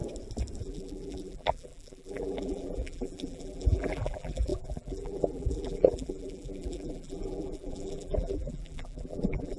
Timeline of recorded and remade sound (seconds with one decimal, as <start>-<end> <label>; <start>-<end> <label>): 0.0-0.6 recorded; 0.6-9.6 remade